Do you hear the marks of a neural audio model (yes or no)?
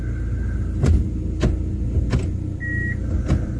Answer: no